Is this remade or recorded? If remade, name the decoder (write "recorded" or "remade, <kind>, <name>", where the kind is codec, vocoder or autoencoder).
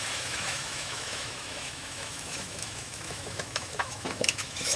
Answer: remade, autoencoder, DAC-VAE